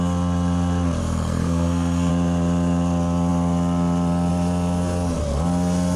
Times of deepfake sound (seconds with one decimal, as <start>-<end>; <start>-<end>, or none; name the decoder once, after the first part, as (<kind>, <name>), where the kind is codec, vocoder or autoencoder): 1.0-2.1 (codec, SNAC)

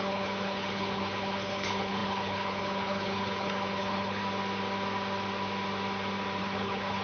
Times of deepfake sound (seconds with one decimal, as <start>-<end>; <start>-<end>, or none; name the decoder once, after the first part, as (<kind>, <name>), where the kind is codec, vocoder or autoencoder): 0.0-4.2 (codec, HILCodec); 6.4-7.0

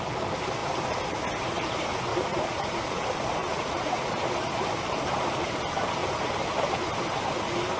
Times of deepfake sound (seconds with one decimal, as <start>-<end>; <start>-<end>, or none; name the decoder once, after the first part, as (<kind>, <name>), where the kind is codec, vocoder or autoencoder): 2.1-3.0 (vocoder, Vocos); 3.4-4.1

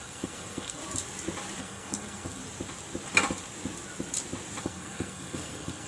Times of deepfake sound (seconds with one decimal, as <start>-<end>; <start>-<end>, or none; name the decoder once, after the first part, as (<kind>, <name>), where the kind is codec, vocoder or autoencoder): 0.0-0.8 (codec, SNAC); 1.6-2.4; 4.6-5.9

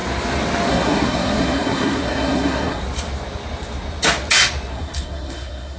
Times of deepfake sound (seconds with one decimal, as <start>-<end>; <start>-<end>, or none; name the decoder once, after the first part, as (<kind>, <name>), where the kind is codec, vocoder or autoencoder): 0.7-2.8 (codec, SNAC); 4.7-5.8

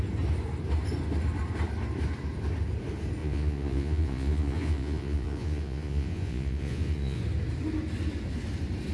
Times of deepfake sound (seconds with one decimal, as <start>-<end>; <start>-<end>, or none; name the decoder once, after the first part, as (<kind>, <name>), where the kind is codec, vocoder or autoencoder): 3.2-7.2 (vocoder, Vocos)

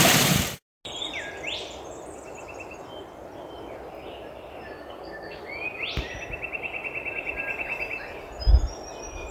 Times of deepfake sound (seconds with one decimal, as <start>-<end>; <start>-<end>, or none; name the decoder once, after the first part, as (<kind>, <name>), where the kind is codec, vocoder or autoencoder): 4.8-5.5 (codec, SNAC)

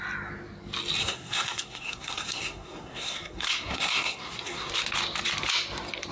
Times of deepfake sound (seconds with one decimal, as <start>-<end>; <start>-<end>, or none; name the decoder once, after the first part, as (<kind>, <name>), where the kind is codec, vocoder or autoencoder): 1.0-4.7 (codec, SNAC)